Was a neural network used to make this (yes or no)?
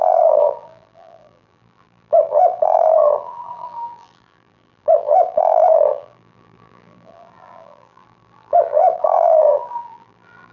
yes